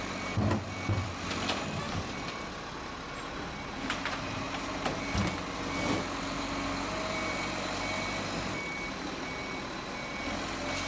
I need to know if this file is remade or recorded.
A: recorded